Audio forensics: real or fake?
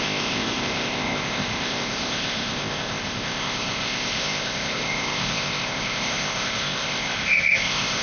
fake